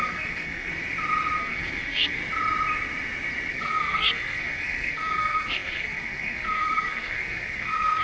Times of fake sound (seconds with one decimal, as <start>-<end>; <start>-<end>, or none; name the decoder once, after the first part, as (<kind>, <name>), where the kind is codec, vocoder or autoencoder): 0.0-0.7 (codec, SNAC); 1.4-2.2; 3.5-8.0